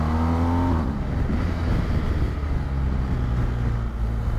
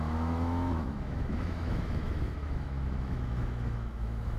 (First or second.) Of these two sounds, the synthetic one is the second